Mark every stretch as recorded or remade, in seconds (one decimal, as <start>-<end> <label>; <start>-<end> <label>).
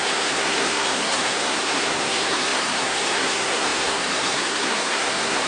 0.0-5.5 remade